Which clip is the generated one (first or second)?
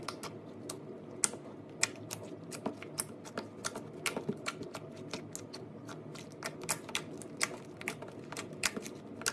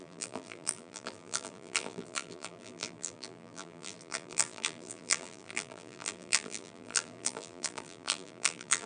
second